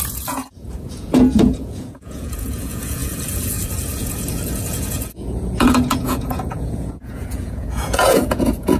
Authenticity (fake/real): fake